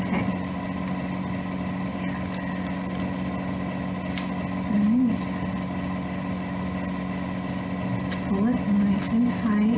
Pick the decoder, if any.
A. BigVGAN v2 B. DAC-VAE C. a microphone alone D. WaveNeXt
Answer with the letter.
C